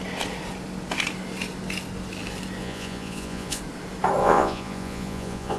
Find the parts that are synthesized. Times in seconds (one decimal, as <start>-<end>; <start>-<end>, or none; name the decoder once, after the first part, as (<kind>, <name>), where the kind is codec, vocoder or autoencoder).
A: 2.6-3.6 (vocoder, Vocos); 4.2-5.6